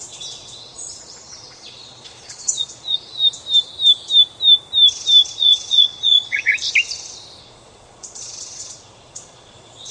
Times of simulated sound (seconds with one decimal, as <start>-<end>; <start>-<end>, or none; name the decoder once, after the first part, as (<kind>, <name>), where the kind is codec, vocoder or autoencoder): 0.0-3.2 (vocoder, Vocos); 5.3-6.5; 7.4-9.9